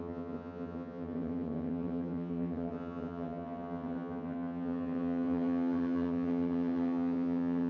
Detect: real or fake fake